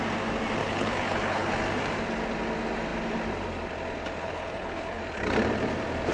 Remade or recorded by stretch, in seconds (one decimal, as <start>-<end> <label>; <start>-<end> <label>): 0.0-0.6 recorded; 0.6-1.5 remade; 1.5-4.2 recorded; 4.2-5.0 remade; 5.0-6.1 recorded